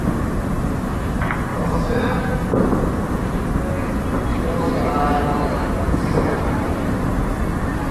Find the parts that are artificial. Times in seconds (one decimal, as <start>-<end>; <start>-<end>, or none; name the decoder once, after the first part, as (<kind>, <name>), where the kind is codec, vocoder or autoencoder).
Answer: 4.3-6.9 (vocoder, BigVGAN v2)